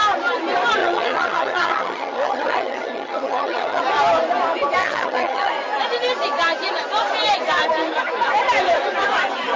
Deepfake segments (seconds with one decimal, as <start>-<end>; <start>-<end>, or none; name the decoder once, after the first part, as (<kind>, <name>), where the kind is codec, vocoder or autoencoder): 0.8-3.8 (vocoder, HiFi-GAN); 4.8-5.5